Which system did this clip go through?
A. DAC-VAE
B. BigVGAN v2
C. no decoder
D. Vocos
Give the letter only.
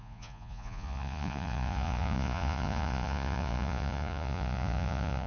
D